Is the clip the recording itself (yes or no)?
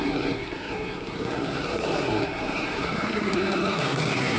no